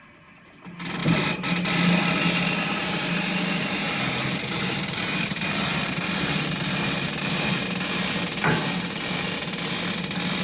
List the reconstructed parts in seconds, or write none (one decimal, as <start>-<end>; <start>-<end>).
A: 2.8-7.6